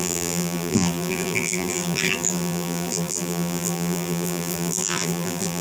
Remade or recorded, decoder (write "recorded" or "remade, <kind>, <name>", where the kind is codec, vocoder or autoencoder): remade, vocoder, BigVGAN v2